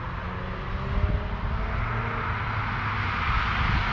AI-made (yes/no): no